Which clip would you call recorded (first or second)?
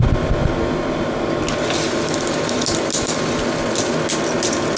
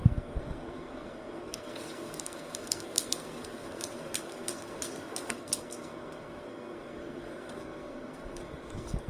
first